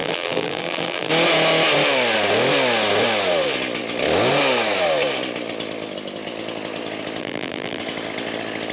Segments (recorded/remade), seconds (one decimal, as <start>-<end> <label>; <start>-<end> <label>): 0.0-1.1 remade; 1.1-7.2 recorded; 7.2-7.8 remade; 7.8-8.7 recorded